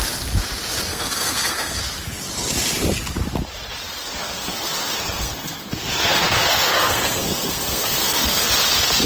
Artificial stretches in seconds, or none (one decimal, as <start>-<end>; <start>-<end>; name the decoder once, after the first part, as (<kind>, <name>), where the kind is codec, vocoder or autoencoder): 0.9-1.8 (codec, SNAC); 4.0-8.5